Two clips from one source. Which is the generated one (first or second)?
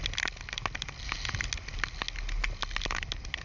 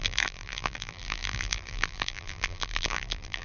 second